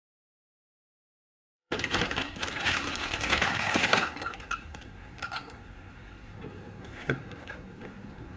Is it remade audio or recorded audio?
remade